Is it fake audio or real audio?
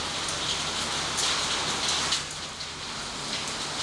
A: real